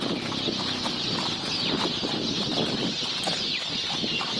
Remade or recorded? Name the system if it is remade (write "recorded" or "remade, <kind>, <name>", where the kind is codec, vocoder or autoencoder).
recorded